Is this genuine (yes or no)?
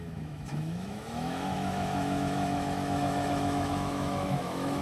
no